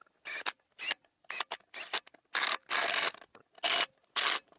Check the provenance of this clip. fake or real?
real